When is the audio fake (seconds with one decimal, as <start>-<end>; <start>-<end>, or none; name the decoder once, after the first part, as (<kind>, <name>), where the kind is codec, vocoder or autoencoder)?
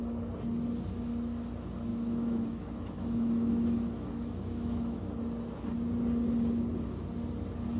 1.9-5.2 (autoencoder, DAC-VAE)